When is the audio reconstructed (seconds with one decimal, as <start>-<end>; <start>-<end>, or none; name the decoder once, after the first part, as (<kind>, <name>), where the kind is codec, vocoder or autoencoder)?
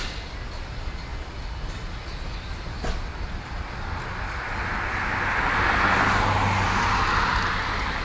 none